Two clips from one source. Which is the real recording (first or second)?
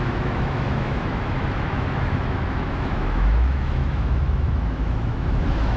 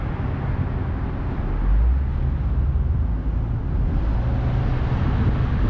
second